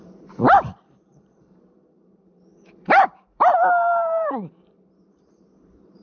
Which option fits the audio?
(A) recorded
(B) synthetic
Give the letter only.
B